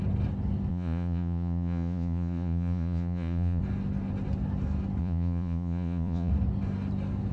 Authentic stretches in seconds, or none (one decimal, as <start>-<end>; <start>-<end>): 0.0-0.7; 3.6-5.0; 6.3-7.3

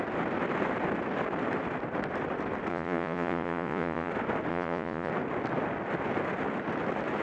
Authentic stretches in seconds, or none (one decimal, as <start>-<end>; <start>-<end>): 0.0-2.7; 4.1-4.5; 5.1-7.2

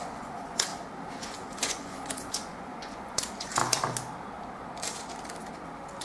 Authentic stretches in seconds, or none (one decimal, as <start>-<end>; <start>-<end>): 0.7-1.2; 3.6-6.0

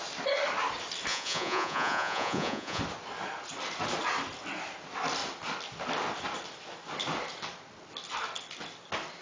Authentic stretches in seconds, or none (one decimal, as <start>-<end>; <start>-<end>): 0.0-1.1; 2.8-9.2

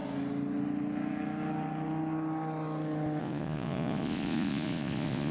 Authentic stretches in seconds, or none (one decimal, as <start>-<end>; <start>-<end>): 0.0-3.2

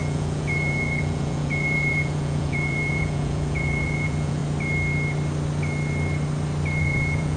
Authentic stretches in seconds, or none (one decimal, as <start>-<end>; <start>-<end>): 4.4-6.8

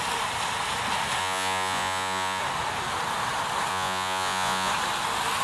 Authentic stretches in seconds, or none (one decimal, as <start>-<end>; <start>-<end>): 0.0-1.2; 2.4-3.7; 4.7-5.4

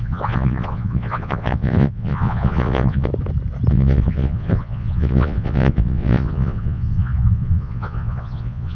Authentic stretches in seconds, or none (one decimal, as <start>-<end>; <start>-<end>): 3.1-3.7